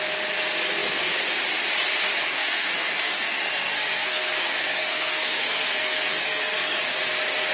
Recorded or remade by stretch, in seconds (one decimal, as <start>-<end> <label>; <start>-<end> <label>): 0.0-2.3 recorded; 2.3-6.8 remade; 6.8-7.5 recorded